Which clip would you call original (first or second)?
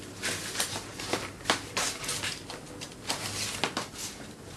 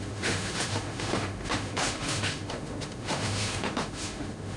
first